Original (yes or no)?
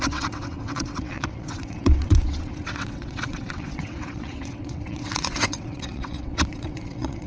no